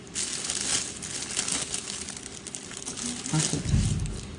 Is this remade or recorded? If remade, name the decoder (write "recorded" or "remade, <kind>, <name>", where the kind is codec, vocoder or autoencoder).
recorded